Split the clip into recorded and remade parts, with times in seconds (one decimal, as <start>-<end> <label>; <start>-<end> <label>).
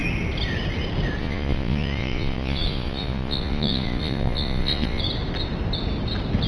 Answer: 0.0-1.2 recorded; 1.2-5.0 remade; 5.0-6.5 recorded